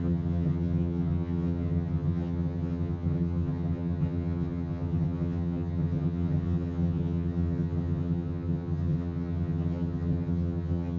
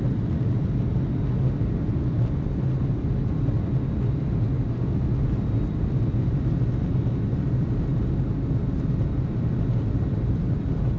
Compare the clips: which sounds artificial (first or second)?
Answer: first